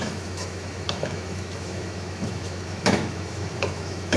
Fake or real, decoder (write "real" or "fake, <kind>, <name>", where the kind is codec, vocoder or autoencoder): fake, autoencoder, DAC-VAE